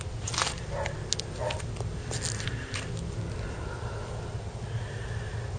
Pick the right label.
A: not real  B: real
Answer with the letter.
B